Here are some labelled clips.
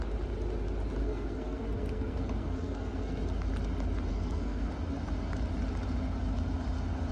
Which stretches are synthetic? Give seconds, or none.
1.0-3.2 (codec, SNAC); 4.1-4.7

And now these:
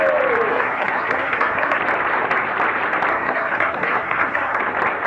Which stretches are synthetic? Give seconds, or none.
0.5-1.8 (codec, SNAC); 3.1-4.6

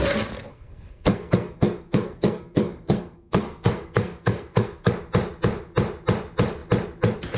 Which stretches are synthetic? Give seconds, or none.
0.5-4.9 (codec, SNAC)

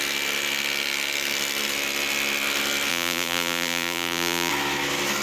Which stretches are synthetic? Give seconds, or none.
2.9-4.5 (vocoder, BigVGAN v2)

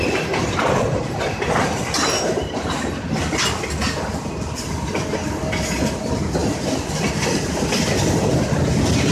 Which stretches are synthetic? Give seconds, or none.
none